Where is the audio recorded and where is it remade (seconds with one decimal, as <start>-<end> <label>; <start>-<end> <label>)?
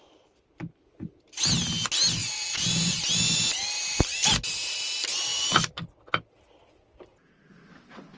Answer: 0.0-2.2 recorded; 2.2-3.0 remade; 3.0-8.2 recorded